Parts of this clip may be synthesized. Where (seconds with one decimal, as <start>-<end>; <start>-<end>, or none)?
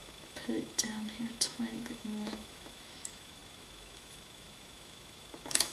0.0-5.7